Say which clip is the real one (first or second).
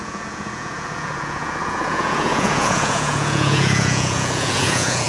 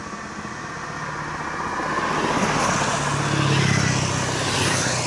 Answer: second